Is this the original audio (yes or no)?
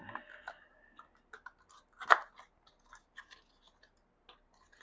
yes